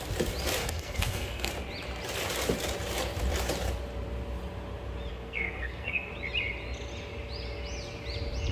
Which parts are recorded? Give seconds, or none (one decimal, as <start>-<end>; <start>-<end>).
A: 0.0-0.6; 1.5-5.1; 6.1-8.5